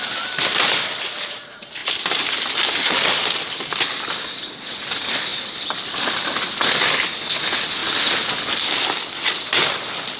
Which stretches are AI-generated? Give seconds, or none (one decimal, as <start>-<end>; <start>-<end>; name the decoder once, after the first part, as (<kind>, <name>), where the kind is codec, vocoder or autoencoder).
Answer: 1.8-3.3 (vocoder, BigVGAN v2); 5.3-6.5